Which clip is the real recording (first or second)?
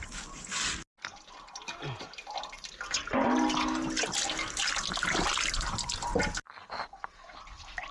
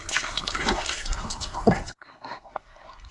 first